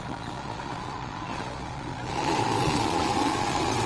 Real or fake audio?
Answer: fake